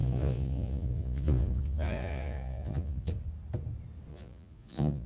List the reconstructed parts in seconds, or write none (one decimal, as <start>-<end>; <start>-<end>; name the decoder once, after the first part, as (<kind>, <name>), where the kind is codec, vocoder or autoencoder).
0.0-3.1 (vocoder, Vocos); 4.1-5.1